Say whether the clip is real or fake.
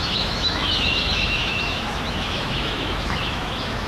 fake